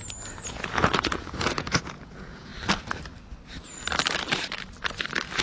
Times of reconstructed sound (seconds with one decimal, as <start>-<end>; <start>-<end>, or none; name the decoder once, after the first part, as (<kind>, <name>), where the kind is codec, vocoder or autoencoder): 0.5-2.5 (vocoder, Vocos)

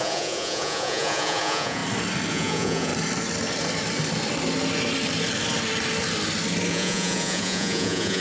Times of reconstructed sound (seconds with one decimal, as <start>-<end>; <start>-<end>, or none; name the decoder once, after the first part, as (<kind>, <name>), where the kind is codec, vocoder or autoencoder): 0.0-1.8 (vocoder, Vocos); 2.3-2.9; 6.7-8.2